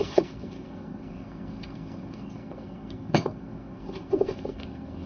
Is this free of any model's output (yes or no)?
no